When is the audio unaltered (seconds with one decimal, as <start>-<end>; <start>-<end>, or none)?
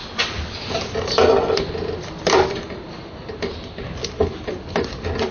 0.0-5.3